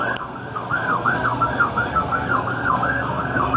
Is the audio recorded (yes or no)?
no